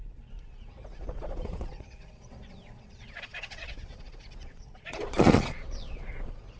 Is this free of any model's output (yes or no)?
no